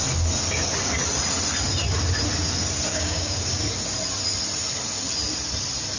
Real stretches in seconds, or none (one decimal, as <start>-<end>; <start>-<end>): 0.0-2.9; 3.7-6.0